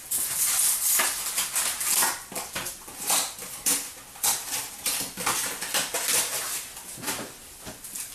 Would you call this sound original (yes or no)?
yes